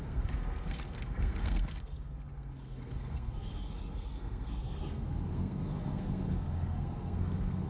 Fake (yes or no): yes